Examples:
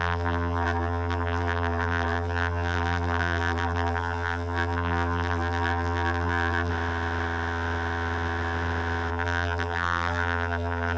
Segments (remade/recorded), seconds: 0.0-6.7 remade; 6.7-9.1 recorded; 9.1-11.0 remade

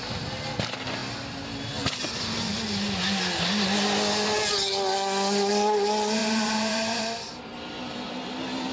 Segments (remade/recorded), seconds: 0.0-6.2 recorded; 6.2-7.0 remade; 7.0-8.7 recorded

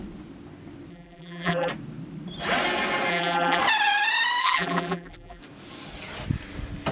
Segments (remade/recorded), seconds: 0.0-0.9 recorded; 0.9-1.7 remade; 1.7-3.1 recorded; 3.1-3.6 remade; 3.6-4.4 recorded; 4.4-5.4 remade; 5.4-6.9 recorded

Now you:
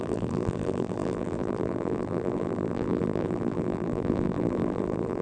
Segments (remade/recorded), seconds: 0.0-5.2 remade

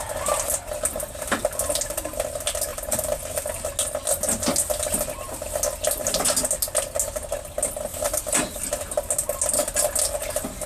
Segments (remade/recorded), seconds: 0.0-2.7 recorded; 2.7-3.2 remade; 3.2-10.7 recorded